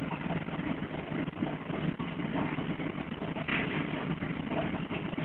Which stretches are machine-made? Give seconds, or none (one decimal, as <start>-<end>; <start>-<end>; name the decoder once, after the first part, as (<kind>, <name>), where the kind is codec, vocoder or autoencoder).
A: 3.5-5.2 (vocoder, BigVGAN v2)